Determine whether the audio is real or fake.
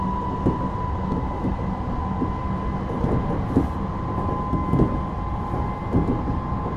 real